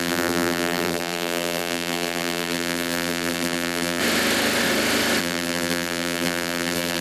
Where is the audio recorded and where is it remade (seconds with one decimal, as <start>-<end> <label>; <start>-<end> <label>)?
0.0-4.0 remade; 4.0-5.2 recorded; 5.2-7.0 remade